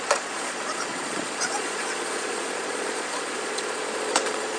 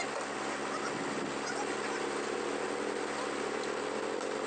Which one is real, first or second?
second